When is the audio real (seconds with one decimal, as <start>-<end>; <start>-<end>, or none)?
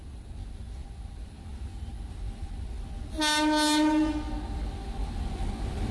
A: 0.0-5.9